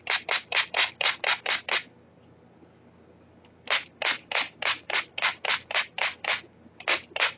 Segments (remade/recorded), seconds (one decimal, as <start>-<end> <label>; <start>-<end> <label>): 0.0-7.4 recorded